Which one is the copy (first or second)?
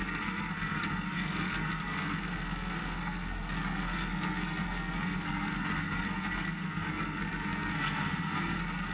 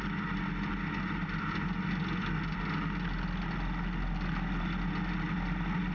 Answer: first